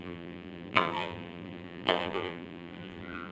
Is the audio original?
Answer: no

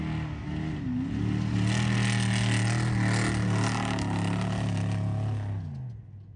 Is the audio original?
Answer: yes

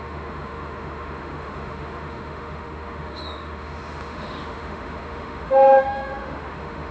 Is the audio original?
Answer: no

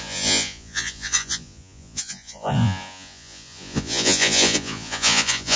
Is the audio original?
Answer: no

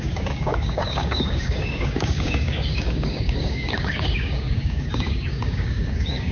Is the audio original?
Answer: no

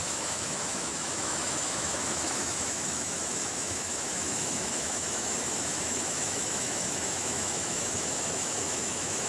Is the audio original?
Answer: no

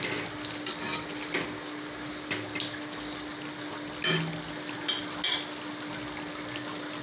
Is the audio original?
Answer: yes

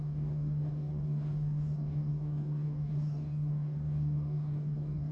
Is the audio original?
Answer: no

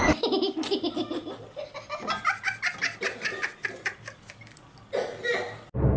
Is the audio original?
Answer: yes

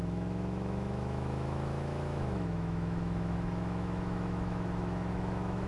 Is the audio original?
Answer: no